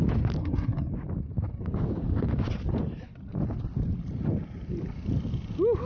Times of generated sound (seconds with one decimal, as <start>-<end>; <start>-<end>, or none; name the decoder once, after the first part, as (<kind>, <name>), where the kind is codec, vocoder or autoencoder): 0.4-0.9 (codec, SNAC)